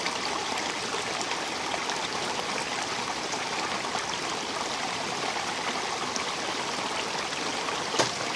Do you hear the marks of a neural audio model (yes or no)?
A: no